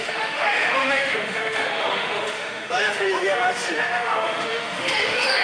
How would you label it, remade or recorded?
remade